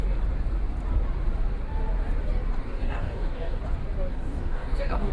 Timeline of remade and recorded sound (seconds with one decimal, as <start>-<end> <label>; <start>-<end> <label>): 0.0-2.6 recorded; 2.6-3.6 remade; 3.6-4.1 recorded; 4.1-5.1 remade